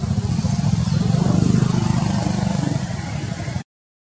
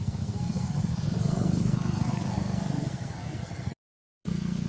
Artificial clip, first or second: second